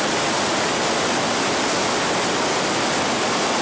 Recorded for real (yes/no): yes